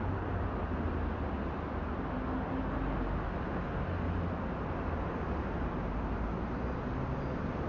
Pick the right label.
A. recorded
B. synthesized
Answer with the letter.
A